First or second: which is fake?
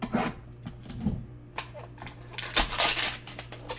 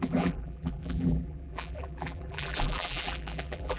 second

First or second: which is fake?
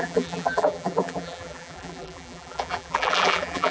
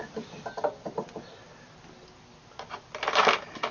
first